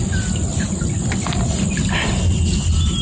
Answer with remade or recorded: recorded